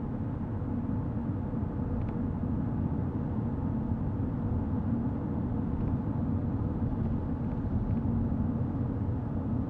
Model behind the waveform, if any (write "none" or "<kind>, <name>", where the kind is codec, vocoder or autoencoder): none